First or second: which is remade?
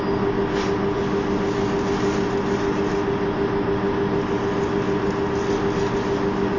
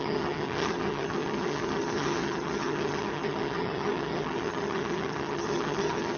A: second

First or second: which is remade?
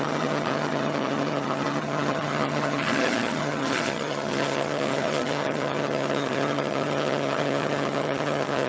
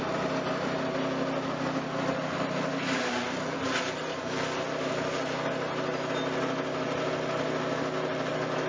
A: first